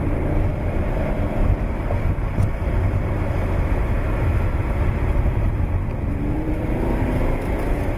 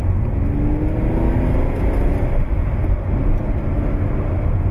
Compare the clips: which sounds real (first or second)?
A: second